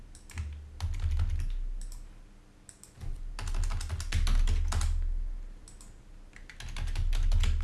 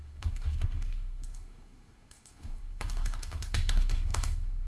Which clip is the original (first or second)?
first